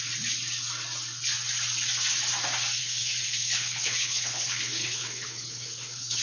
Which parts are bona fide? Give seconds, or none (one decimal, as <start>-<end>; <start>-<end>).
0.0-2.8

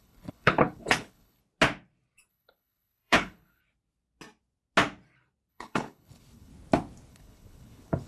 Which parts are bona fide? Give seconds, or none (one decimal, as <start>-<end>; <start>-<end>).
1.4-2.3; 3.6-5.5; 6.5-7.1

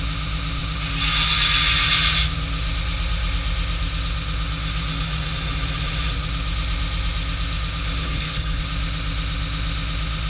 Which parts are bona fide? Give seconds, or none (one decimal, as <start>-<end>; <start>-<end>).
0.0-8.0; 8.6-10.3

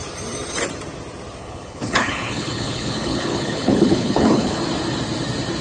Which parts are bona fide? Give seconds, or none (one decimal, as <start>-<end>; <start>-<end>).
0.0-1.4; 4.6-5.6

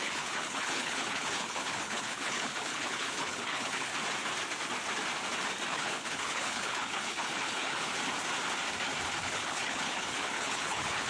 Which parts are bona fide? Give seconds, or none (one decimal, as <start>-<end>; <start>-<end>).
3.9-5.7; 7.9-9.2

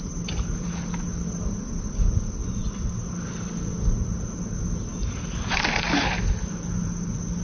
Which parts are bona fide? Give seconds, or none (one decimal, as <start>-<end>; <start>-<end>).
0.0-7.4

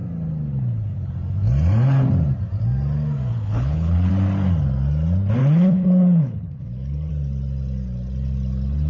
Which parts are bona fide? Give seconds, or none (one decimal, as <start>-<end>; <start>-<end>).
0.0-3.3; 4.1-5.4; 7.1-8.9

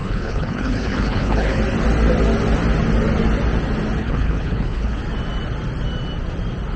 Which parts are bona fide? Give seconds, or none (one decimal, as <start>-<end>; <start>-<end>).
1.6-4.0; 5.0-6.8